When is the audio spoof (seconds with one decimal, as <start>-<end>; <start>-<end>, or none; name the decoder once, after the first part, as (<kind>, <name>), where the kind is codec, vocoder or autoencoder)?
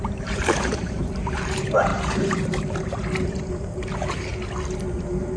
0.0-4.3 (vocoder, BigVGAN v2); 4.9-5.4